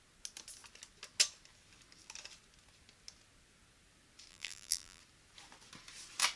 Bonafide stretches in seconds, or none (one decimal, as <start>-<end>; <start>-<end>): 0.0-4.3; 5.0-6.4